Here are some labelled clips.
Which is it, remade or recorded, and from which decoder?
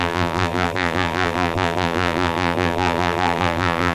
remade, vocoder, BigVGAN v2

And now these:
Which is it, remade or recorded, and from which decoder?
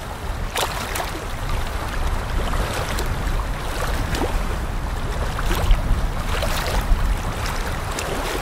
recorded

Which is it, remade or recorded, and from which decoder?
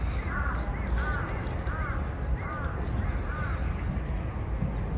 recorded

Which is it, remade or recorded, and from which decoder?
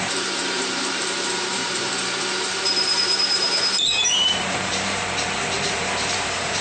remade, vocoder, BigVGAN v2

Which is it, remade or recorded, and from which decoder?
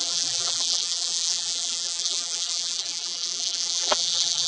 remade, vocoder, BigVGAN v2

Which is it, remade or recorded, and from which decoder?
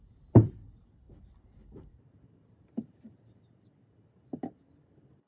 remade, vocoder, BigVGAN v2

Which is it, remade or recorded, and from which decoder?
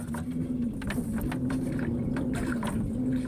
recorded